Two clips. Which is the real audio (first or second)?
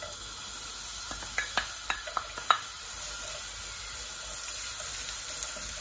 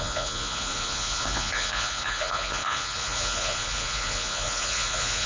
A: first